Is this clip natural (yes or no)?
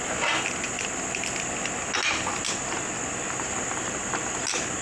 yes